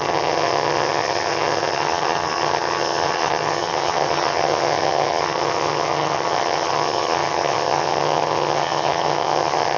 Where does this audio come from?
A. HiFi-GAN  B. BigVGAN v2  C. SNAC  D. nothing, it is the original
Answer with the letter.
A